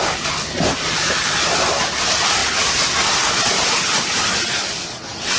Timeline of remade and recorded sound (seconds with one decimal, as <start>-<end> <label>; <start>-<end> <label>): 0.0-5.4 recorded